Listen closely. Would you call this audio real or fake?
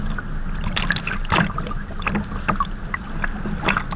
real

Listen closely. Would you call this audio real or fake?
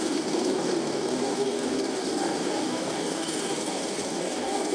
fake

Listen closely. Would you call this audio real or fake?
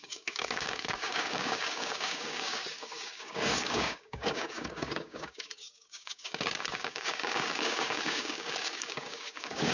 fake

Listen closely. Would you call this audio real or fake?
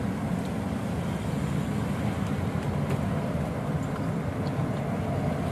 real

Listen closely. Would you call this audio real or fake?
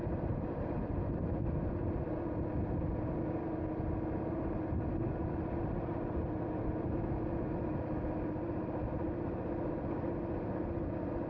real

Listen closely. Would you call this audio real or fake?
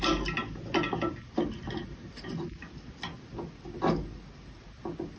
real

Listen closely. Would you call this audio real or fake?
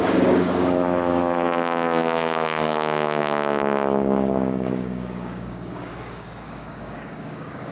fake